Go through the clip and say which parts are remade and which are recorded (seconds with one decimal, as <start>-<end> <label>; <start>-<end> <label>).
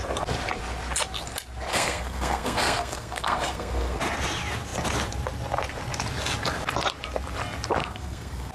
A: 0.0-1.7 recorded; 1.7-4.0 remade; 4.0-7.8 recorded; 7.8-8.5 remade